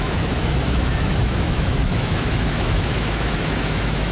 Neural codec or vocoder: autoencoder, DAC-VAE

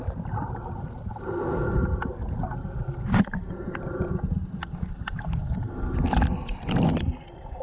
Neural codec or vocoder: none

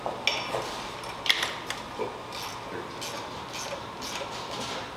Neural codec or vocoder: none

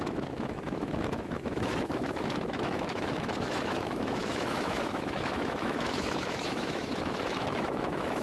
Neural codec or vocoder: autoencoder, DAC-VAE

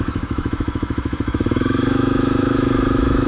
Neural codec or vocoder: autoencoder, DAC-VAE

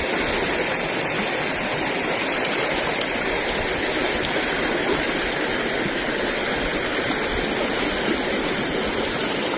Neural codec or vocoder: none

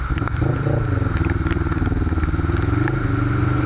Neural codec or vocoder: none